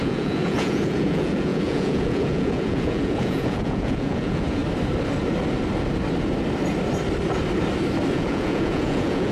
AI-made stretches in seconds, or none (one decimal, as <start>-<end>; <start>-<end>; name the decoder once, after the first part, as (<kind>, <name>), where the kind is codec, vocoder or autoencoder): 0.0-4.6 (vocoder, Vocos); 8.1-9.3